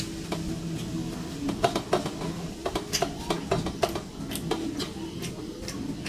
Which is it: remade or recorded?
recorded